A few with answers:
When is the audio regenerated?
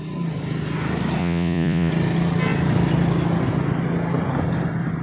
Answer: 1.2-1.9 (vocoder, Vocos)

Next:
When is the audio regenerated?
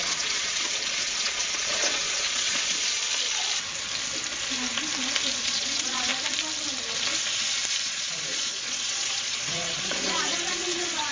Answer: 0.0-3.0 (vocoder, Vocos); 5.4-6.1; 7.8-11.1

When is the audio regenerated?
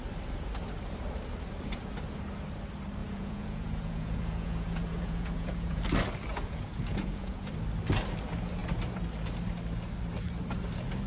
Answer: 3.0-5.8 (vocoder, Vocos); 6.3-7.5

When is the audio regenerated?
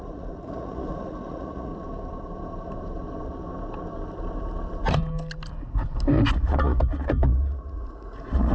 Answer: 0.0-1.7 (vocoder, Vocos); 6.3-8.5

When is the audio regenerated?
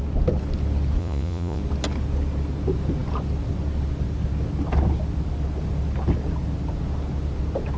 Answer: 1.0-1.6 (vocoder, Vocos)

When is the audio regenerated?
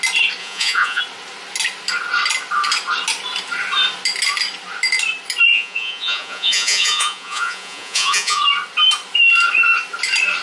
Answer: 0.4-1.0 (vocoder, Vocos); 5.5-8.4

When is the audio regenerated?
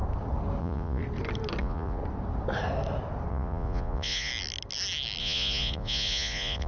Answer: 0.6-1.0 (vocoder, Vocos); 1.6-2.0; 3.3-4.3; 5.2-6.7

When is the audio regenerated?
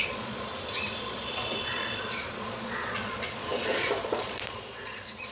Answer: 0.0-0.5 (vocoder, Vocos); 1.0-5.3